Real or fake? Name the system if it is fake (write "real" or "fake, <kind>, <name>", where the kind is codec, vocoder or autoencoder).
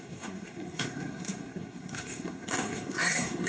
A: fake, codec, SNAC